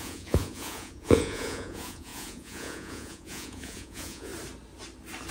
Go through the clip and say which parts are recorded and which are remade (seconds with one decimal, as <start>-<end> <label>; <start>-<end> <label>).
0.0-4.3 remade; 4.3-5.3 recorded